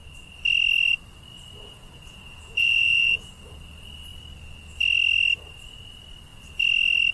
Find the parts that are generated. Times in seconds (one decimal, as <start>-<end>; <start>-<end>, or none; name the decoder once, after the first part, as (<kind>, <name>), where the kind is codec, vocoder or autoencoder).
1.3-3.5 (vocoder, Vocos)